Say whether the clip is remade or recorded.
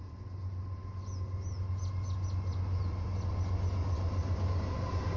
recorded